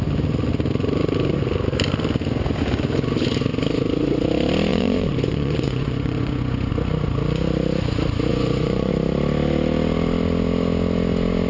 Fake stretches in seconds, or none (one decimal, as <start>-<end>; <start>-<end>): 4.7-6.7; 8.3-8.9